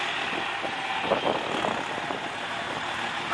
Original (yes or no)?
yes